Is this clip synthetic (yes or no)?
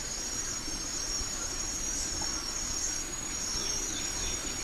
yes